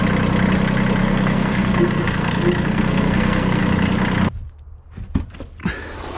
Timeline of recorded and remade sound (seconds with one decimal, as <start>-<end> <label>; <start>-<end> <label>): 0.0-1.0 recorded; 1.0-3.6 remade; 3.6-6.2 recorded